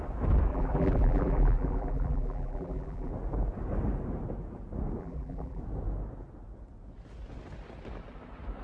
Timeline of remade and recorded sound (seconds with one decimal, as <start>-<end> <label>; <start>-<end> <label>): 0.0-0.5 recorded; 0.5-3.1 remade; 3.1-5.0 recorded; 5.0-5.6 remade; 5.6-8.6 recorded